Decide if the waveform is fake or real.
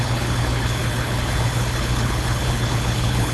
fake